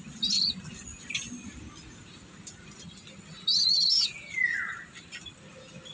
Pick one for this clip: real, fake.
real